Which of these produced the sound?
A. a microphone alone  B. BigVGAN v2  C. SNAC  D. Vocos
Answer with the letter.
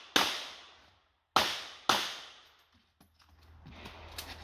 A